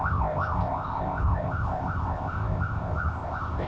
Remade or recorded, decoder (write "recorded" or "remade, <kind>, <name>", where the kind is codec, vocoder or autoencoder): remade, codec, ZipCodec